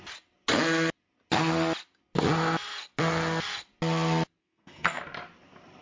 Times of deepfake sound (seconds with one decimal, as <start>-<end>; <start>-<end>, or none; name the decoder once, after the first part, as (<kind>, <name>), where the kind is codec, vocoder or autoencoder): 4.4-5.0 (codec, SNAC)